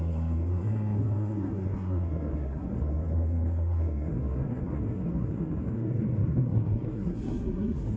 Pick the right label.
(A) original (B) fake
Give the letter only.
B